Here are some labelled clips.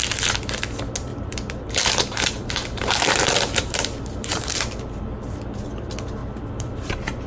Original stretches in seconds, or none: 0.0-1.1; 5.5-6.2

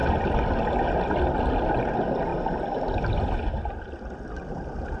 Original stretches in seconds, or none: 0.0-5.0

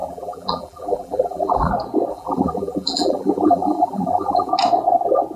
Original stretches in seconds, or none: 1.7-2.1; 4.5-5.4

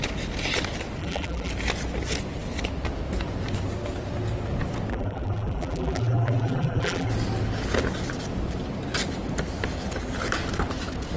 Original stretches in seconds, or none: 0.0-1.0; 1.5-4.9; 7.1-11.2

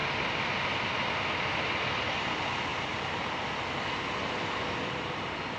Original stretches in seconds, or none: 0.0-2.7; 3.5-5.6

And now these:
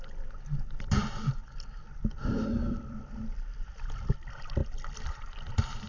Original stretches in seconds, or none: 0.0-1.4; 3.7-4.6

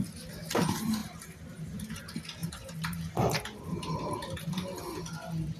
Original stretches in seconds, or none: 0.0-1.0; 2.0-2.4; 4.2-5.6

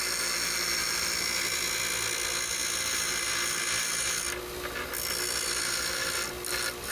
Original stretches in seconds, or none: 0.0-6.9